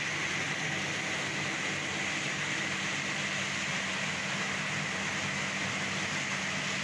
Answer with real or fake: real